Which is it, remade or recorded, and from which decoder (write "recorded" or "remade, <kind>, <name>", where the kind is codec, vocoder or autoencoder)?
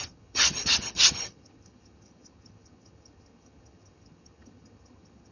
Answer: remade, vocoder, HiFi-GAN